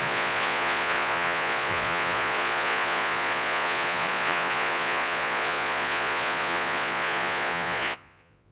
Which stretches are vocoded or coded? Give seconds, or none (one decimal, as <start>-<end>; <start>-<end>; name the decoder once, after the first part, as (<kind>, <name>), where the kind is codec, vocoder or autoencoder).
0.0-8.5 (vocoder, Vocos)